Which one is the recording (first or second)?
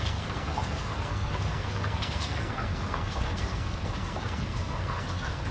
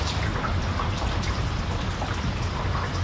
second